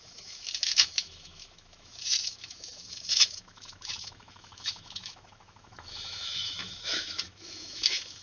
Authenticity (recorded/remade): remade